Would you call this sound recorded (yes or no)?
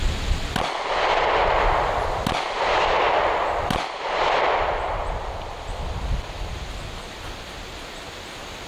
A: yes